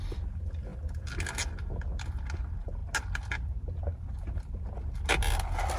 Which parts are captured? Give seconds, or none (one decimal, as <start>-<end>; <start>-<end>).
0.0-5.8